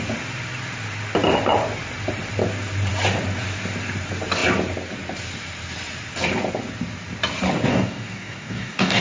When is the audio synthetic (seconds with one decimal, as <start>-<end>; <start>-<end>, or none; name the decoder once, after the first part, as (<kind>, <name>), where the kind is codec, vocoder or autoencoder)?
7.7-9.0 (codec, DAC)